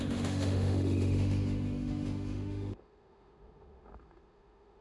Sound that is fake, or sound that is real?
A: fake